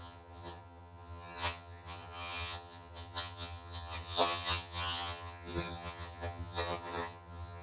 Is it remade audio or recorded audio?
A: remade